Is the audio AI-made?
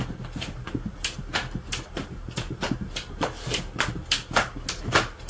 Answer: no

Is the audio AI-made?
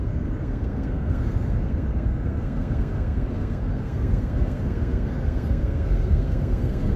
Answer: yes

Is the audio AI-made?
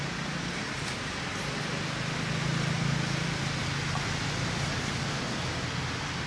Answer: no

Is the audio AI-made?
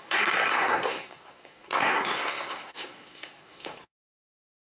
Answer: yes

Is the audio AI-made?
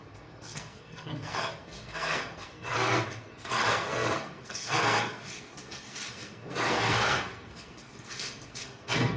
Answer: yes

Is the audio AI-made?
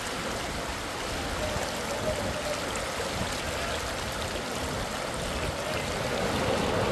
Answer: no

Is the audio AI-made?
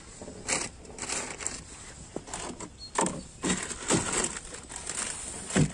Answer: no